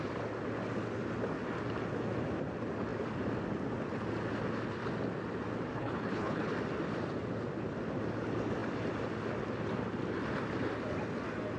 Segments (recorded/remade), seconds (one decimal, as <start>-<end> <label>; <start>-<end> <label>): 0.0-5.7 recorded; 5.7-6.5 remade; 6.5-11.6 recorded

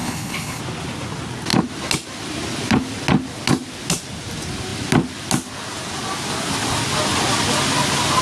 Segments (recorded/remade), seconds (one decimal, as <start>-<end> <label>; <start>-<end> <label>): 0.0-0.6 remade; 0.6-8.2 recorded

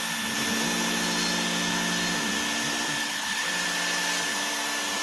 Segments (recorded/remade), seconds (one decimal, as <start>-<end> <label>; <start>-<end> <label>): 0.0-3.0 recorded; 3.0-3.5 remade; 3.5-5.0 recorded

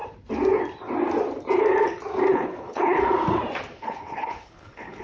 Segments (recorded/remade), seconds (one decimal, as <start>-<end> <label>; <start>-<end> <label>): 0.0-2.3 recorded; 2.3-3.0 remade; 3.0-3.8 recorded; 3.8-5.0 remade

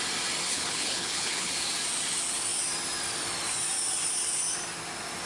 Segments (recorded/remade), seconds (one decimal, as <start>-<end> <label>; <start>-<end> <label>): 0.0-0.5 recorded; 0.5-1.5 remade; 1.5-5.3 recorded

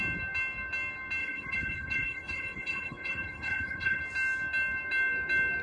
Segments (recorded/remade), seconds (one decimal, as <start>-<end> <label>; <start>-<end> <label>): 0.0-1.2 recorded; 1.2-4.0 remade; 4.0-5.6 recorded

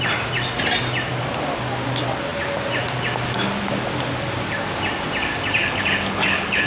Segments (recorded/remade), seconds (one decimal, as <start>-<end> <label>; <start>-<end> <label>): 0.0-5.6 recorded; 5.6-6.7 remade